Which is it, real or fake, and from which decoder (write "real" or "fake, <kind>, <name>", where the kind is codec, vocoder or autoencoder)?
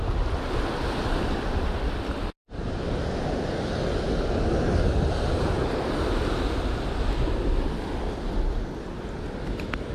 real